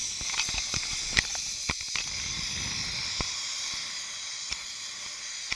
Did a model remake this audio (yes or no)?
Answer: no